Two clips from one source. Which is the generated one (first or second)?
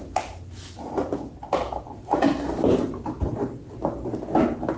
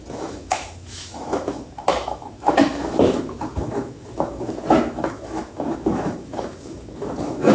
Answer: second